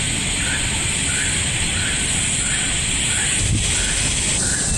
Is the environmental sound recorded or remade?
recorded